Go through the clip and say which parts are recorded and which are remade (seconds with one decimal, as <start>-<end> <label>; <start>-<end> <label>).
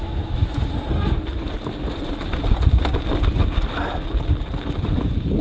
0.0-0.7 remade; 0.7-5.4 recorded